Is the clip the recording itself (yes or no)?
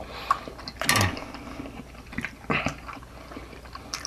yes